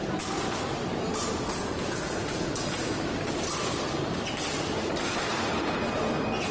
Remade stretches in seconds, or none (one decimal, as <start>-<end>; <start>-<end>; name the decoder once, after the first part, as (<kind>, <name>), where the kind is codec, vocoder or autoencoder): 1.1-2.5 (vocoder, Vocos)